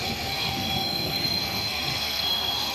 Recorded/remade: remade